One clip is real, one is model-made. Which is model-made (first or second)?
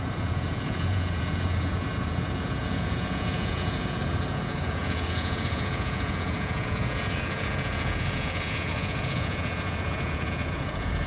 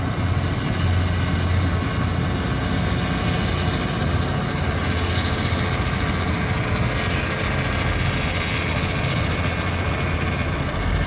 first